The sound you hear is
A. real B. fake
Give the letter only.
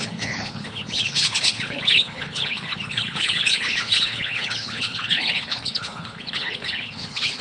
B